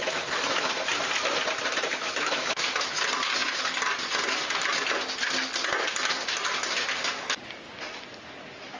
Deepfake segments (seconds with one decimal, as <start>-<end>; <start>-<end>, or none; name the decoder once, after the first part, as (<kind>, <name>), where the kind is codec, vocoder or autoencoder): 0.0-0.7 (autoencoder, DAC-VAE); 1.9-3.0